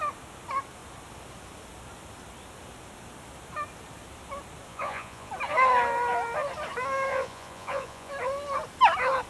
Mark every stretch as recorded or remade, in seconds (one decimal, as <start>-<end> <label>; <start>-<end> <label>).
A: 0.0-4.7 recorded; 4.7-5.3 remade; 5.3-7.1 recorded; 7.1-8.1 remade; 8.1-9.3 recorded